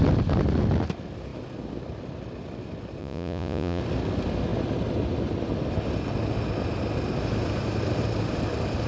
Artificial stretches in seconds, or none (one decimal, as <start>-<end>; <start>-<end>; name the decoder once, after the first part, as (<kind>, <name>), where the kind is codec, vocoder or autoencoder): 3.0-3.8 (vocoder, Vocos)